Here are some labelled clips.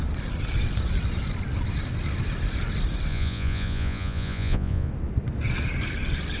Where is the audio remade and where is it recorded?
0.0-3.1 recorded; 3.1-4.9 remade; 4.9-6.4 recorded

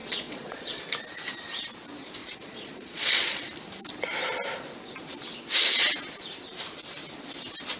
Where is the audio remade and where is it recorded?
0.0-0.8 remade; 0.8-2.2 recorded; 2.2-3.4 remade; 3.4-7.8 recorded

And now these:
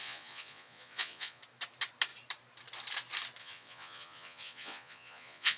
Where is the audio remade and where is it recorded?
0.0-1.4 remade; 1.4-3.4 recorded; 3.4-5.6 remade